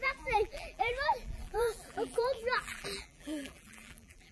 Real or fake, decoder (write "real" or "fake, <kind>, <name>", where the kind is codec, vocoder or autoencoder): fake, vocoder, BigVGAN v2